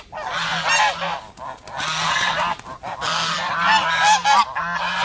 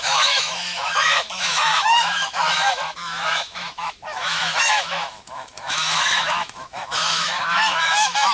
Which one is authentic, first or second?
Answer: first